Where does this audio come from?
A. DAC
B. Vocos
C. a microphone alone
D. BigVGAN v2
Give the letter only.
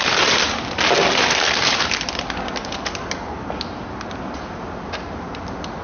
C